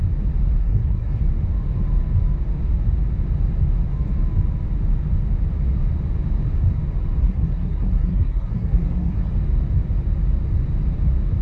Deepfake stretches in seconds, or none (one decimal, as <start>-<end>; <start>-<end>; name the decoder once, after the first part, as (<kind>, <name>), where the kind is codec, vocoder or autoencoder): 0.6-1.2 (codec, SNAC); 7.2-9.3